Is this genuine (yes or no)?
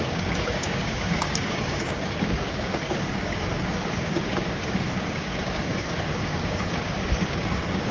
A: no